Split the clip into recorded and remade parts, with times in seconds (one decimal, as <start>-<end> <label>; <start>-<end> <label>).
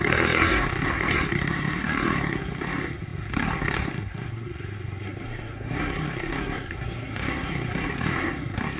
0.0-8.8 remade